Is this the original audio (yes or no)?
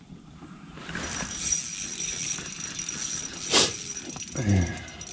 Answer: yes